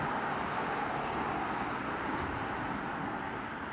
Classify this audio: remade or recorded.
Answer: recorded